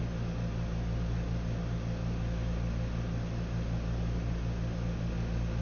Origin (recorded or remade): recorded